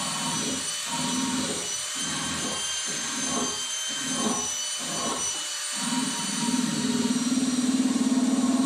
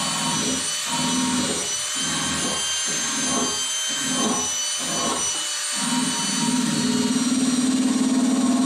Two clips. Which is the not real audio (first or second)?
first